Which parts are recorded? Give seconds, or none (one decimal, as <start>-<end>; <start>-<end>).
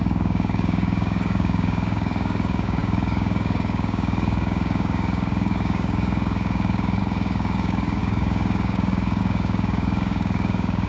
none